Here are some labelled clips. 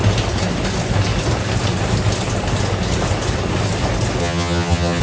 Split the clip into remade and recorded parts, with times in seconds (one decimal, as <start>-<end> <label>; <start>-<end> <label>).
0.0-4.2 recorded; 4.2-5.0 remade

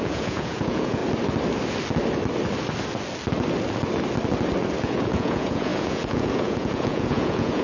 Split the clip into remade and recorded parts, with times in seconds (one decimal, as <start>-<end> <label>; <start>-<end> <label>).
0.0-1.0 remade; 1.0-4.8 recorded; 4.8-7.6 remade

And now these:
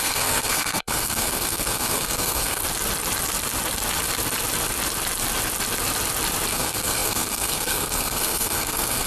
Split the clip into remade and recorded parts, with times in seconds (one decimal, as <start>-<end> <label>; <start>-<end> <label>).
0.0-2.6 remade; 2.6-6.5 recorded; 6.5-9.1 remade